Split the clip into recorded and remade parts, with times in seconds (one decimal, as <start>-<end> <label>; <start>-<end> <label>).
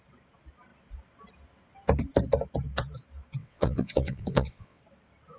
0.0-3.4 recorded; 3.4-4.8 remade; 4.8-5.4 recorded